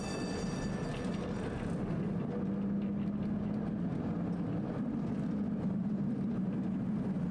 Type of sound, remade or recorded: recorded